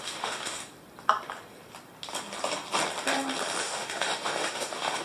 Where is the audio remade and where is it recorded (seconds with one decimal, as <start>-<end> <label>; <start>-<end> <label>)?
0.0-0.6 remade; 0.6-3.6 recorded; 3.6-5.0 remade